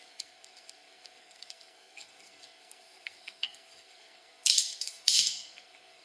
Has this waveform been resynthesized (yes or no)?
yes